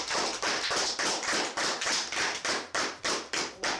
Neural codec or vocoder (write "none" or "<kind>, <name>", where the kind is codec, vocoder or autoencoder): vocoder, BigVGAN v2